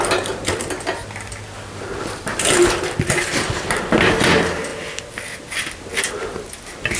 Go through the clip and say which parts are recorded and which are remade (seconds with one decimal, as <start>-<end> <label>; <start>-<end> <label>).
0.0-7.0 recorded